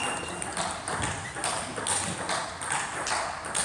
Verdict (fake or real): real